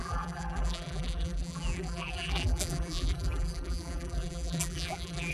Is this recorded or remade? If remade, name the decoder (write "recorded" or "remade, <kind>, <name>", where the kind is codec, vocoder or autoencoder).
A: remade, vocoder, BigVGAN v2